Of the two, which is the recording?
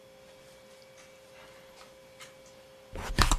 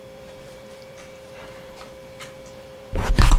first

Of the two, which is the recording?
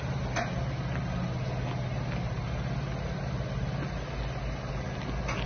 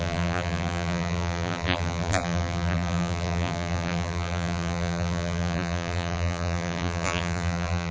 first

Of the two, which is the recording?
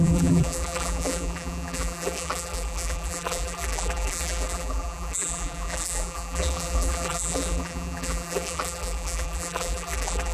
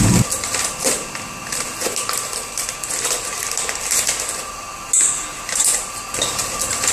second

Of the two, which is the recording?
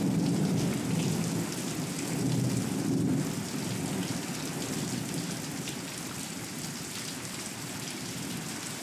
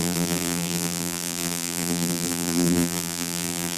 first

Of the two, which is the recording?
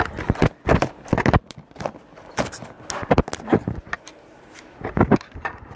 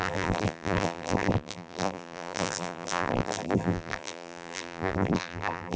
first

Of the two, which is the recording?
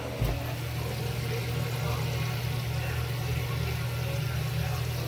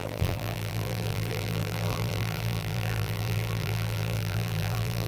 first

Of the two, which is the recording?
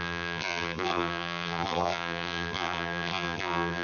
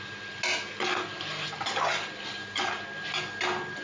second